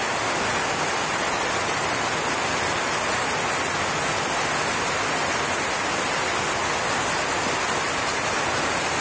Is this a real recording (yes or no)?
yes